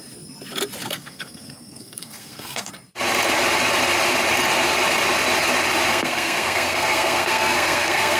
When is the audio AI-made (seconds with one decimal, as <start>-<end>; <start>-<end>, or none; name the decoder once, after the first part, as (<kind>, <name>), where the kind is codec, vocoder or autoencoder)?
0.8-2.7 (codec, SNAC); 5.9-8.2